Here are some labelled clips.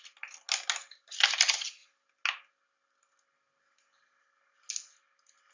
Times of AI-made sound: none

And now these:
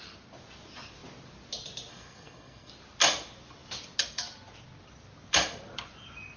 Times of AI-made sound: 1.9-2.7 (codec, SNAC)